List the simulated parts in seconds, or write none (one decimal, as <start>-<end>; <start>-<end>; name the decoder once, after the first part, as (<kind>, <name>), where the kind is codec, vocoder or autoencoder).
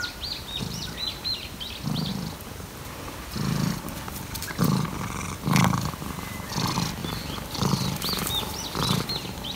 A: 2.1-3.7 (vocoder, BigVGAN v2); 7.0-9.1